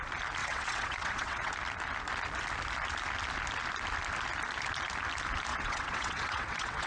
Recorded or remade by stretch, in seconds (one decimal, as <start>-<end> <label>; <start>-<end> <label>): 0.0-0.4 recorded; 0.4-1.5 remade; 1.5-5.5 recorded; 5.5-6.9 remade